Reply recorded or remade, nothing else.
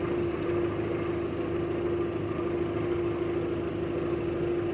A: recorded